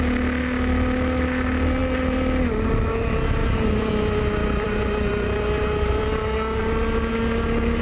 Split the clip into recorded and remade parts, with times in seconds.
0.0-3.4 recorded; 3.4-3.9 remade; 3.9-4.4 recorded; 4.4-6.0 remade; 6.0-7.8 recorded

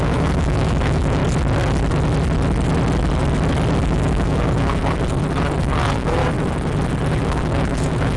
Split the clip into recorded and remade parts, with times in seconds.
0.0-1.2 remade; 1.2-3.8 recorded; 3.8-4.8 remade; 4.8-5.6 recorded; 5.6-6.2 remade; 6.2-7.2 recorded; 7.2-8.2 remade

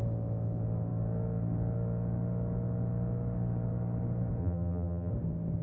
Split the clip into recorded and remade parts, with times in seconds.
0.0-4.4 recorded; 4.4-5.1 remade; 5.1-5.6 recorded

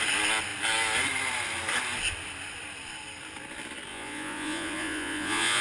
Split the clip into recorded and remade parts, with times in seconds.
0.0-3.9 recorded; 3.9-5.6 remade

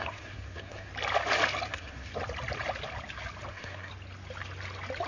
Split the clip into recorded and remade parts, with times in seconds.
0.0-0.9 remade; 0.9-1.7 recorded; 1.7-2.1 remade; 2.1-3.5 recorded; 3.5-3.9 remade; 3.9-5.1 recorded

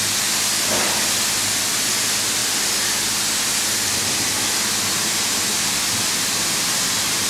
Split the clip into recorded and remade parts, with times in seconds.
0.0-7.3 recorded

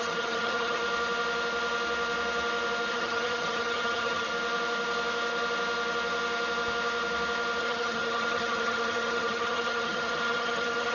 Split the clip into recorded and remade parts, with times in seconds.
0.0-0.8 remade; 0.8-2.9 recorded; 2.9-4.3 remade; 4.3-7.6 recorded; 7.6-10.9 remade

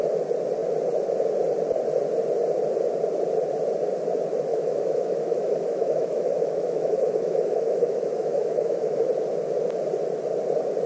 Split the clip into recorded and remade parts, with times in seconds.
0.0-4.5 recorded; 4.5-9.1 remade; 9.1-10.9 recorded